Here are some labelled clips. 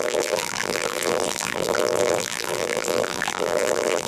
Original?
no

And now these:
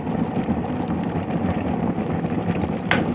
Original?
yes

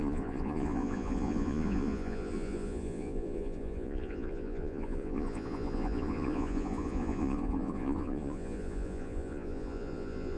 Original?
no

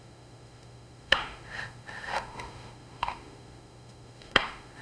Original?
no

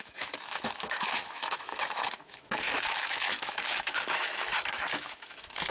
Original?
no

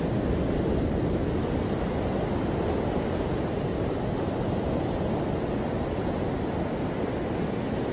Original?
yes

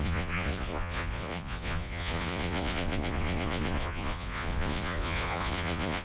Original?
no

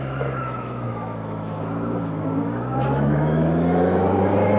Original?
no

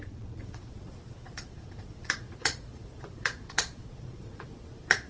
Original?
no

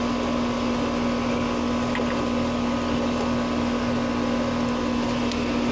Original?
yes